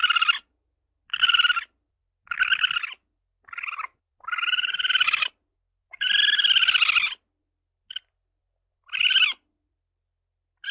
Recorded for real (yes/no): yes